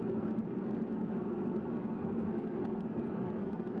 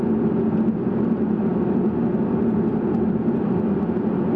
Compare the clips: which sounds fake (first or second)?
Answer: first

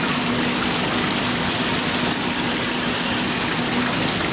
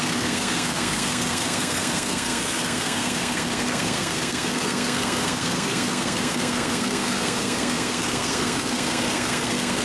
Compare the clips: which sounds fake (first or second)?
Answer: second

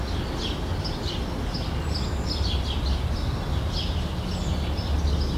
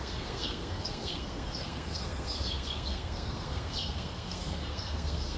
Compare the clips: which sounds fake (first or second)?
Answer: second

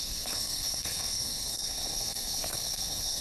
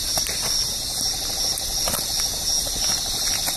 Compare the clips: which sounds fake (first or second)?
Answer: first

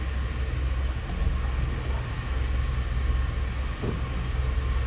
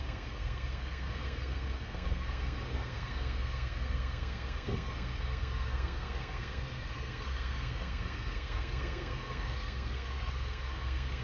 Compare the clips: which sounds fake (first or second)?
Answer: second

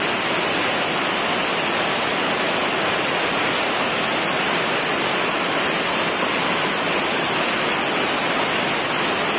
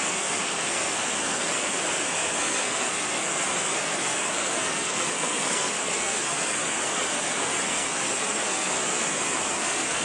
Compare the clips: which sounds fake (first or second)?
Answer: second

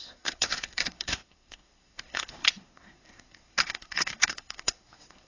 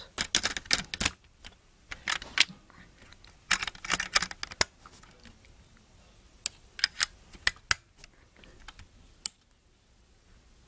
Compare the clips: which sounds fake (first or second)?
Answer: first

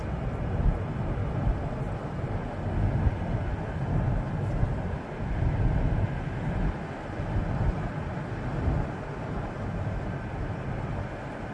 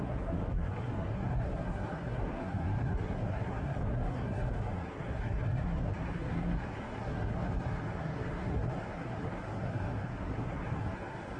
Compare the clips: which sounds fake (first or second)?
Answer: second